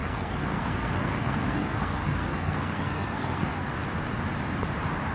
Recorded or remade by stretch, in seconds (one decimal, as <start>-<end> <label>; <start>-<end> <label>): 0.0-3.8 remade; 3.8-5.1 recorded